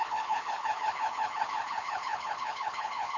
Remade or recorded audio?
remade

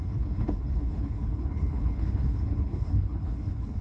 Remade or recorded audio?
remade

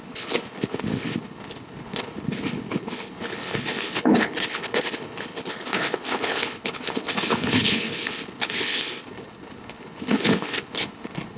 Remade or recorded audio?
remade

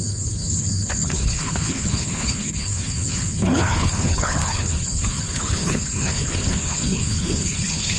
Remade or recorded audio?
remade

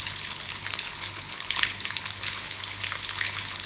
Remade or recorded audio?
remade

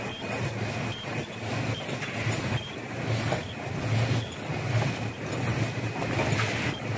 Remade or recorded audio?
recorded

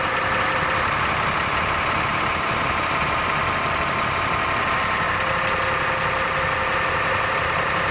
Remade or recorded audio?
recorded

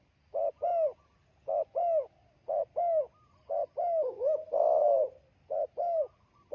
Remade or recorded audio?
recorded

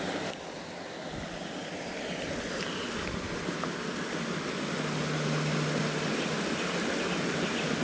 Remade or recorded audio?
recorded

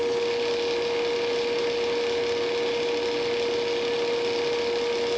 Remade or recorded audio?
recorded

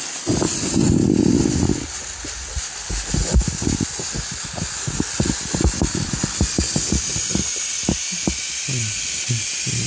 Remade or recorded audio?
recorded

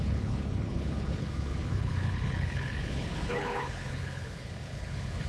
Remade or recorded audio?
remade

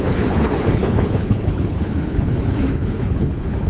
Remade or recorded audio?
remade